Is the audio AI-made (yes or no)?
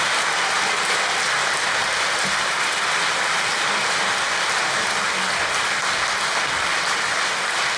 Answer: no